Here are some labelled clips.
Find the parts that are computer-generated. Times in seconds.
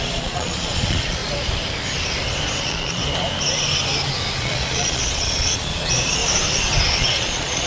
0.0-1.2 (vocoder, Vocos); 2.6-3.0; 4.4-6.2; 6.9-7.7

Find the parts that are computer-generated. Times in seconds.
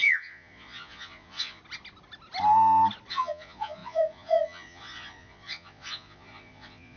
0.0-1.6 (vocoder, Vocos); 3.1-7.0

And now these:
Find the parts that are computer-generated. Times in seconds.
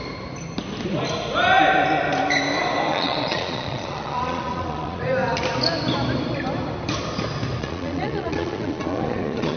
2.9-5.0 (vocoder, Vocos); 7.6-9.6